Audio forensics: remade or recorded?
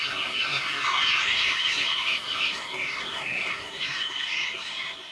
remade